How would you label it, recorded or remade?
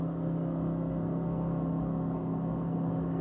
remade